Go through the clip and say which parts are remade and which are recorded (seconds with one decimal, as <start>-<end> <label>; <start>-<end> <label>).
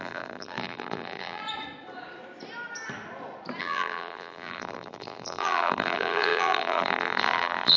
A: 0.0-1.4 remade; 1.4-3.6 recorded; 3.6-7.8 remade